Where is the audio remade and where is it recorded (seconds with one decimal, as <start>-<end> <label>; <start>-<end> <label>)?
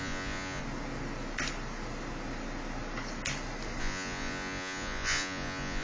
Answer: 0.0-0.6 remade; 0.6-3.8 recorded; 3.8-5.8 remade